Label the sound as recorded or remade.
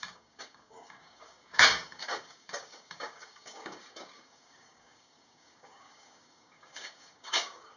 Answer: remade